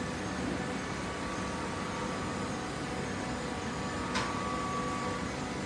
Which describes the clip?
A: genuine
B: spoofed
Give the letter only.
A